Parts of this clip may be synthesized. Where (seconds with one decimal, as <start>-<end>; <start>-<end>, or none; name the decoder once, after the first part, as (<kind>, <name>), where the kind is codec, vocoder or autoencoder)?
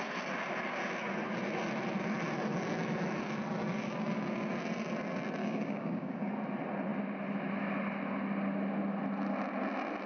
5.4-6.3 (codec, DAC)